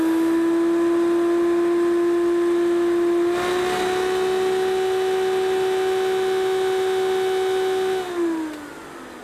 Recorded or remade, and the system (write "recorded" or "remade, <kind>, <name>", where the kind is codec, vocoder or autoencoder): recorded